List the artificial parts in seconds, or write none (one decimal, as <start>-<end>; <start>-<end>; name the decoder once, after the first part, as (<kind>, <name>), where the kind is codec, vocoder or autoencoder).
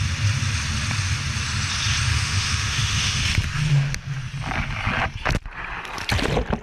2.1-3.2 (autoencoder, DAC-VAE)